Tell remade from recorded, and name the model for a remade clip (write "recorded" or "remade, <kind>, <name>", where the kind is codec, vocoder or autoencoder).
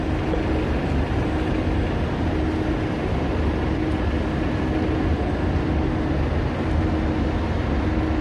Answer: recorded